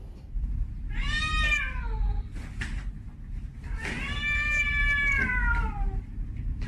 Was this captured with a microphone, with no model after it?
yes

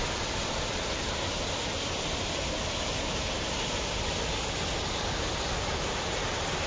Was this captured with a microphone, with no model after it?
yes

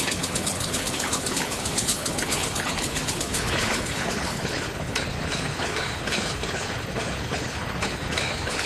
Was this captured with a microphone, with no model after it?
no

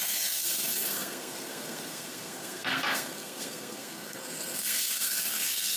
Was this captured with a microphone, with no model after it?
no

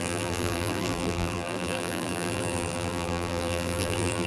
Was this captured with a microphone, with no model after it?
no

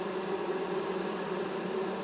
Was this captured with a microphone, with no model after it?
yes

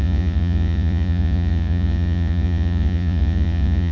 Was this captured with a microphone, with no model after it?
no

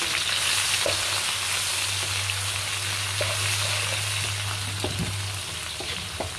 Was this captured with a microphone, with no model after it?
yes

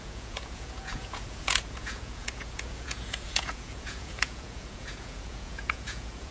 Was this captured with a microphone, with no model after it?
no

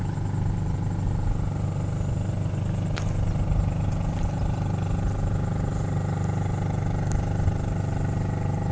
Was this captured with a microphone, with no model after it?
yes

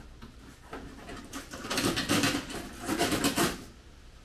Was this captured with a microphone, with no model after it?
yes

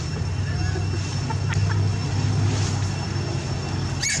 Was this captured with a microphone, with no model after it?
yes